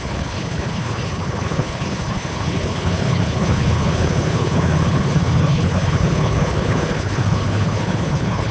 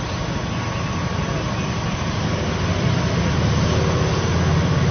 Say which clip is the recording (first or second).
second